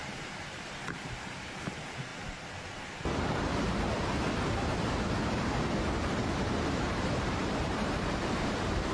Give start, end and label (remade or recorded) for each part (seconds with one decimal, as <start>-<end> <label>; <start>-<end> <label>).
0.0-2.1 remade; 2.1-6.7 recorded; 6.7-8.9 remade